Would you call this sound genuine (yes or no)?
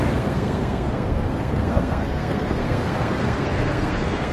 no